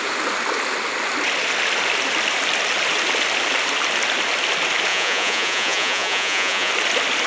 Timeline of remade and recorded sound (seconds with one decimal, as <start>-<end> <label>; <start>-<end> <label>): 0.0-4.9 recorded; 4.9-6.7 remade; 6.7-7.3 recorded